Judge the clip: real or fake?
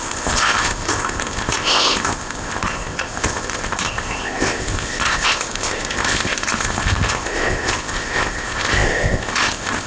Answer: fake